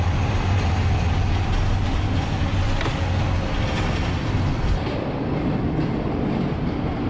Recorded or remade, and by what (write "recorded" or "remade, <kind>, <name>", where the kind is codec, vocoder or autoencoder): recorded